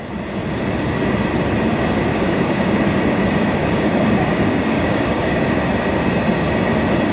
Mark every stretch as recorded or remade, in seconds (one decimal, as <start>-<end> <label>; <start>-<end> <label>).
0.0-2.1 recorded; 2.1-2.8 remade; 2.8-3.6 recorded; 3.6-5.5 remade; 5.5-7.1 recorded

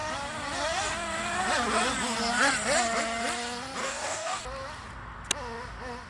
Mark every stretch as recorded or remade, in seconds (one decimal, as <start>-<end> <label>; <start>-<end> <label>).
0.0-3.8 recorded; 3.8-4.4 remade; 4.4-6.1 recorded

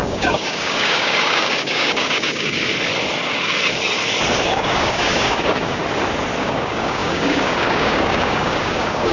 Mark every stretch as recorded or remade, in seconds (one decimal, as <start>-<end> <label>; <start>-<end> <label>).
0.0-2.7 remade; 2.7-4.4 recorded; 4.4-5.8 remade; 5.8-6.4 recorded; 6.4-9.1 remade

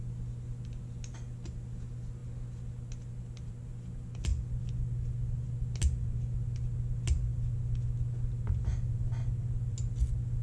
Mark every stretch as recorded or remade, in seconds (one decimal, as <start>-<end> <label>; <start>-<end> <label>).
0.0-10.4 recorded

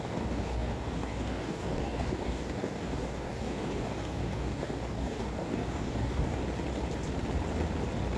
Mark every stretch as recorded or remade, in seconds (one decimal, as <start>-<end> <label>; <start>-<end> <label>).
0.0-6.4 remade; 6.4-8.2 recorded

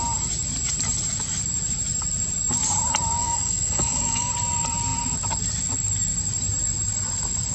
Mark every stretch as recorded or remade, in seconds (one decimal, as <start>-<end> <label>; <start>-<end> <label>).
0.0-3.2 recorded; 3.2-4.3 remade; 4.3-7.5 recorded